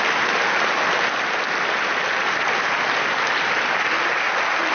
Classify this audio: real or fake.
real